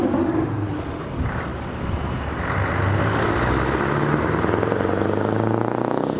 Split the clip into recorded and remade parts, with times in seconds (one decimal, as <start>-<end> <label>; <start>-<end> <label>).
0.0-6.2 recorded

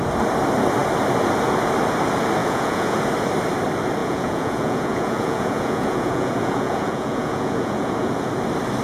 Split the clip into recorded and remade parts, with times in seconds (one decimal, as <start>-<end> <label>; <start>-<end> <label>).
0.0-2.4 recorded; 2.4-3.0 remade; 3.0-4.0 recorded; 4.0-8.3 remade; 8.3-8.8 recorded

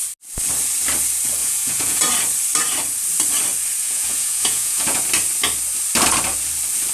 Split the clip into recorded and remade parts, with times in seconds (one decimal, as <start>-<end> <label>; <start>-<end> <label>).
0.0-1.4 recorded; 1.4-2.0 remade; 2.0-3.8 recorded; 3.8-5.0 remade; 5.0-6.9 recorded

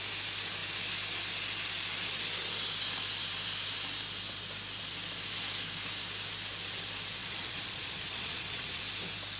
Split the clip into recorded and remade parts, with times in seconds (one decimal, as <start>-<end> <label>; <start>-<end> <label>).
0.0-7.2 recorded; 7.2-8.8 remade; 8.8-9.4 recorded

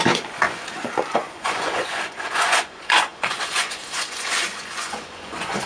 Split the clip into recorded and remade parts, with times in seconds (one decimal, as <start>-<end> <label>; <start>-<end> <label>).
0.0-5.7 remade

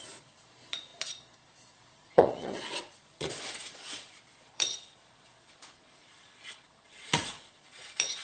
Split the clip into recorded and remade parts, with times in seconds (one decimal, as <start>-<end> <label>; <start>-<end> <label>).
0.0-8.2 remade

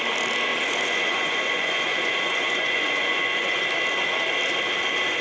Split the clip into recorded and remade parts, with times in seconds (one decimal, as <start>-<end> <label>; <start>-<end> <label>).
0.0-0.5 recorded; 0.5-3.6 remade; 3.6-5.2 recorded